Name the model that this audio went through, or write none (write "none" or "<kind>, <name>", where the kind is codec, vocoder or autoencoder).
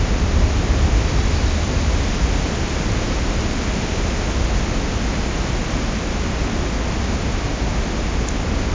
none